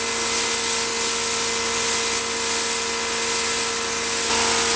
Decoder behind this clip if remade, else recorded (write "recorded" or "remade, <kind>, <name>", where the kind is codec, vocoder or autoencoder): recorded